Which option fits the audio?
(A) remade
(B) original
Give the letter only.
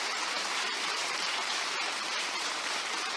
A